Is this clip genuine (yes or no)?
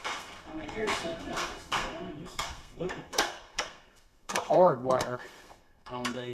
no